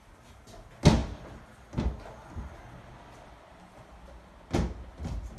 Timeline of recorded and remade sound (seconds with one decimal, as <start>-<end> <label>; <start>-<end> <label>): 0.0-5.4 recorded